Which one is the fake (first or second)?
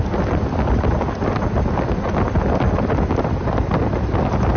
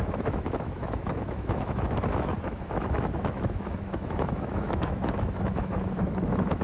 second